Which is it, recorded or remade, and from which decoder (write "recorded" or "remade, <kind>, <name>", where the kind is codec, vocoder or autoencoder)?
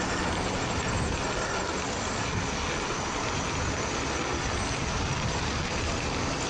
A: recorded